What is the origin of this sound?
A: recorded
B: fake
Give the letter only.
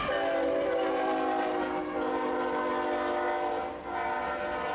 A